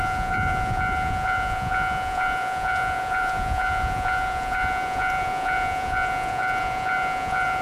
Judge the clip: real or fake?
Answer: fake